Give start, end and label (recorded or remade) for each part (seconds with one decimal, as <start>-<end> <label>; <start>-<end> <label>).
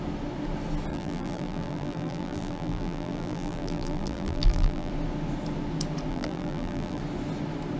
0.0-0.9 recorded; 0.9-4.9 remade; 4.9-6.1 recorded; 6.1-7.0 remade; 7.0-7.8 recorded